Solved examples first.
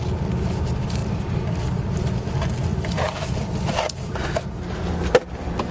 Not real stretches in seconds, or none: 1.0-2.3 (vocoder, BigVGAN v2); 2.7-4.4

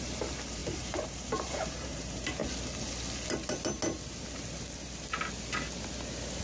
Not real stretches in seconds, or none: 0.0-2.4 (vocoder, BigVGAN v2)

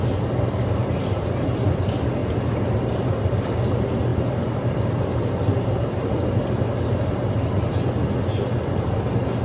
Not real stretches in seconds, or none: 2.2-3.6 (vocoder, BigVGAN v2); 4.1-6.3

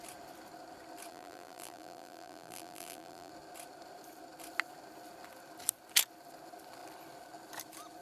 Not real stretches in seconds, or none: 1.1-3.3 (vocoder, BigVGAN v2)

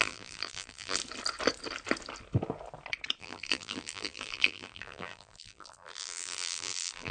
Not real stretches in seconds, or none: 0.0-1.0 (vocoder, BigVGAN v2); 3.2-7.1